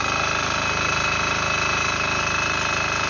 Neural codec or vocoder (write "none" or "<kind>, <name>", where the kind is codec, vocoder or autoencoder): vocoder, BigVGAN v2